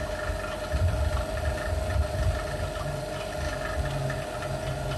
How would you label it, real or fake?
real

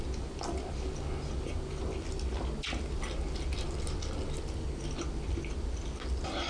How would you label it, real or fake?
real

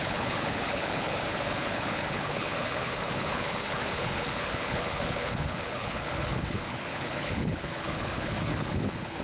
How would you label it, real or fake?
fake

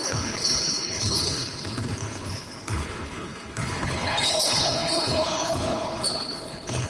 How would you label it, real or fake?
fake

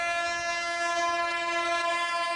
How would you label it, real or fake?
real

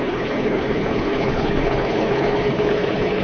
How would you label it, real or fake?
fake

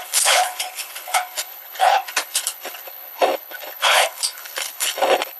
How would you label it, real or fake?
fake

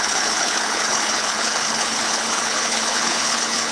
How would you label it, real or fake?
fake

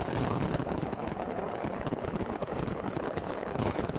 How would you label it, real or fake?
fake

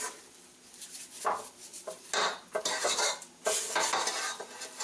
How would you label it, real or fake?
real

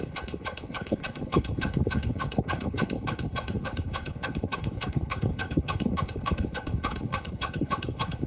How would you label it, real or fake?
fake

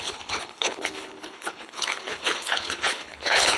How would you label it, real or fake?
fake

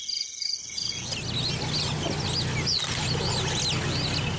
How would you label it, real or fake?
real